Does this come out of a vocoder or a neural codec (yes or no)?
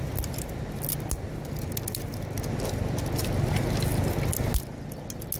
no